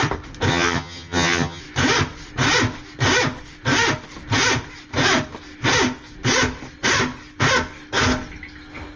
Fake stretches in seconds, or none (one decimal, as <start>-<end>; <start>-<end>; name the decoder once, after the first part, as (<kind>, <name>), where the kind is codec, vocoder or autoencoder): 0.5-1.6 (vocoder, HiFi-GAN)